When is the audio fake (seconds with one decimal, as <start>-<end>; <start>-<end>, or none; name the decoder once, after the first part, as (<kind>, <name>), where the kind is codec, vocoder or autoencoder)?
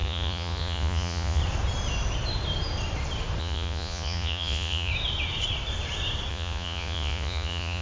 0.0-1.4 (vocoder, Vocos); 3.4-4.9; 6.3-7.8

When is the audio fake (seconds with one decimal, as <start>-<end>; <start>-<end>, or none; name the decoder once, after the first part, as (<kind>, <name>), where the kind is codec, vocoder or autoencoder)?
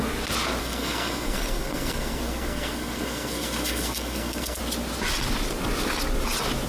0.6-4.6 (codec, SNAC)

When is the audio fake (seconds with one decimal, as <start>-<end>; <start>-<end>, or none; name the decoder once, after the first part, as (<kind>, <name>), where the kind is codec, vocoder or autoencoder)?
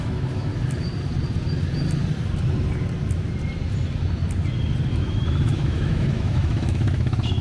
0.0-0.5 (autoencoder, DAC-VAE); 4.9-7.4